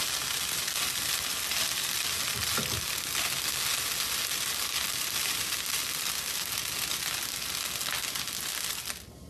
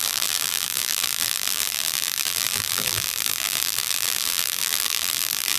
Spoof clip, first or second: second